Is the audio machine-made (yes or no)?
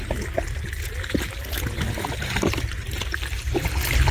no